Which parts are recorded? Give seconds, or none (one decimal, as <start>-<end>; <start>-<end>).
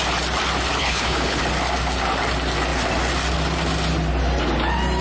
0.0-0.8; 1.4-5.0